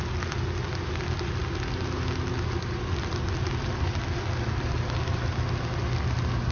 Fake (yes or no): no